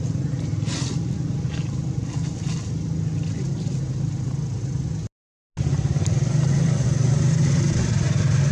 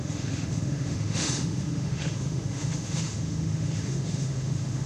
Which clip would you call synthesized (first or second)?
second